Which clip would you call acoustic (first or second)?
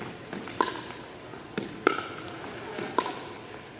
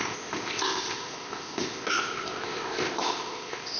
first